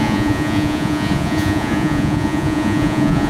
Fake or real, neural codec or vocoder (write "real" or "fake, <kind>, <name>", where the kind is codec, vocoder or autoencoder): fake, vocoder, Vocos